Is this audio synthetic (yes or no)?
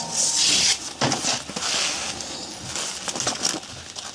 no